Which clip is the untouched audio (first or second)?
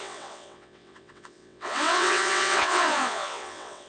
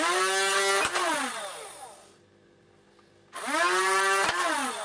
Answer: second